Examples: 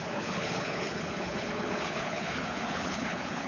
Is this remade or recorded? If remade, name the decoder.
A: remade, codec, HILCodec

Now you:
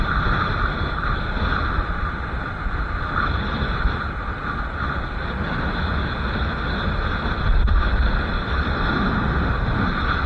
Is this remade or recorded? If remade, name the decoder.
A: recorded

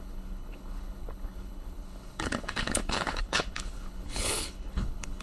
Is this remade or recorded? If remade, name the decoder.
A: remade, codec, HILCodec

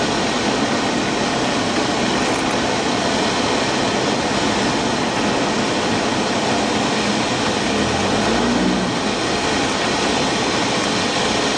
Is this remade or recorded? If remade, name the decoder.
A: recorded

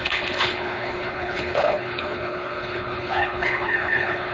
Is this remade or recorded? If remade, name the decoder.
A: remade, codec, HILCodec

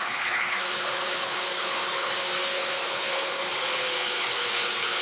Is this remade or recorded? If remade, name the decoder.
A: remade, codec, HILCodec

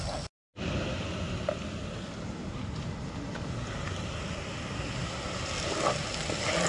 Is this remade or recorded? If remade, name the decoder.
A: recorded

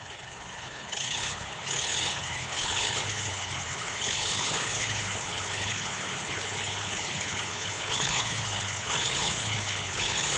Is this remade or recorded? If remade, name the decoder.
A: remade, codec, HILCodec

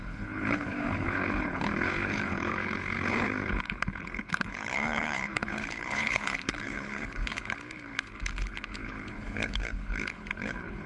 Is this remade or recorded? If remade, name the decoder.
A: remade, codec, HILCodec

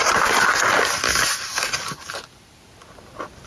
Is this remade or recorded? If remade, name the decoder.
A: recorded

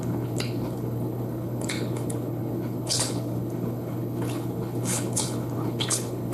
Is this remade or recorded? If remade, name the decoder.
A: remade, codec, HILCodec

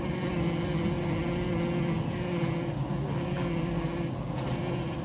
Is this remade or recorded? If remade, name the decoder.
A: recorded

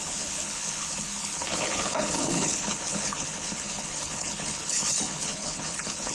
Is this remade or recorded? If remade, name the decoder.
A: remade, codec, HILCodec